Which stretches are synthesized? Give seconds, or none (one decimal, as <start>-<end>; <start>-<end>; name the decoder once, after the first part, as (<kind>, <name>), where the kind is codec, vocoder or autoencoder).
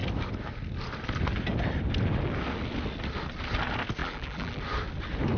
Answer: 4.0-4.6 (vocoder, BigVGAN v2)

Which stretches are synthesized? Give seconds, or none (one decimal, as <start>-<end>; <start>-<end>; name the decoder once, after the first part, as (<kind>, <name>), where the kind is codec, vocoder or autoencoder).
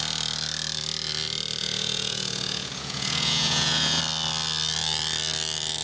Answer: 1.6-4.0 (vocoder, Vocos)